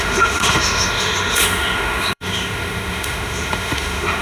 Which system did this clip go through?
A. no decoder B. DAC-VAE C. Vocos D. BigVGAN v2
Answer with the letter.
B